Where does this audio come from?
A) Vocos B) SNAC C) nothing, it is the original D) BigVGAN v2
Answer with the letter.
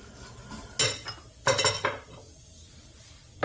C